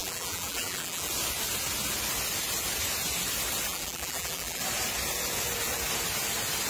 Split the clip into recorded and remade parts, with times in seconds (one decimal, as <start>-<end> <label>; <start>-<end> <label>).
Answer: 0.0-1.1 remade; 1.1-3.7 recorded; 3.7-4.6 remade; 4.6-6.7 recorded